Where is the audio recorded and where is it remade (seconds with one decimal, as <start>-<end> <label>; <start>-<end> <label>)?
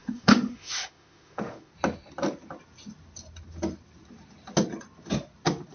0.0-1.7 remade; 1.7-5.7 recorded